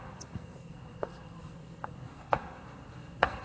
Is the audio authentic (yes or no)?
no